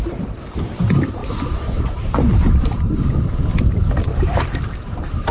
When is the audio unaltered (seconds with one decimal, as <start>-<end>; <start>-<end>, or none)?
1.2-1.8; 3.5-4.3